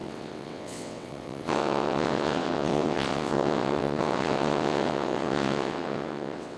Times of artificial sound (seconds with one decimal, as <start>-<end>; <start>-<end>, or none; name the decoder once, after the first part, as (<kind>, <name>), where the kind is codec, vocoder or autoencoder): 0.0-6.6 (vocoder, WaveNeXt)